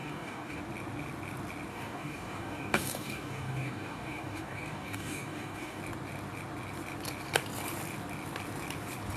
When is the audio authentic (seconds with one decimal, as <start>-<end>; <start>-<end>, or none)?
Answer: 0.6-1.7; 5.8-9.2